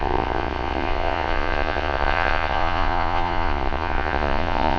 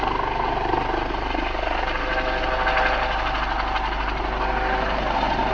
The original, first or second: second